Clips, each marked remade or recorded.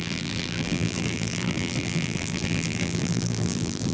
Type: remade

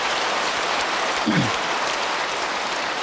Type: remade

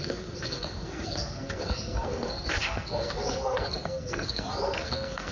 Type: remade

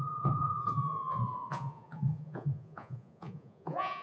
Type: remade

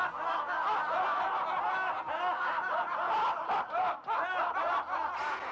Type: recorded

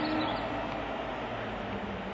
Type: recorded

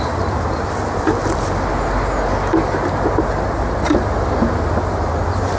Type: recorded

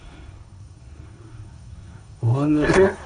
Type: remade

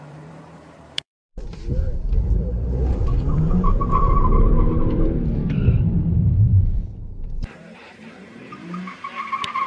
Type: remade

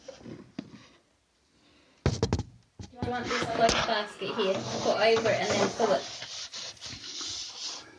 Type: recorded